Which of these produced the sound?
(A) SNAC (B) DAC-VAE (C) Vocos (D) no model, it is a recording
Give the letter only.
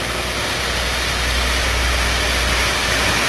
D